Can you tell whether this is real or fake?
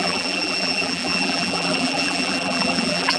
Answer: fake